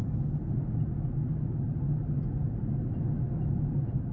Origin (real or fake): real